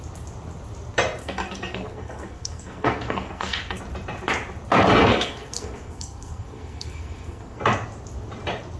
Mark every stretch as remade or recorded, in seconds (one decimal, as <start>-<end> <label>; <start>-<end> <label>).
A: 0.0-1.2 recorded; 1.2-3.8 remade; 3.8-5.0 recorded; 5.0-7.6 remade; 7.6-8.8 recorded